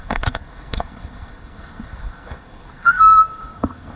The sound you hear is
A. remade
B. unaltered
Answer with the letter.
A